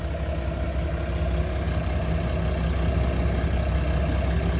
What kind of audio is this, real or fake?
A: real